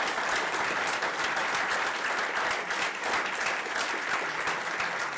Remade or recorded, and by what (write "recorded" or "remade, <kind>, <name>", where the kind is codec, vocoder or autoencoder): recorded